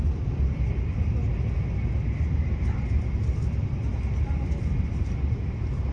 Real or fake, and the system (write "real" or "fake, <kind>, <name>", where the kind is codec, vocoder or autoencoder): real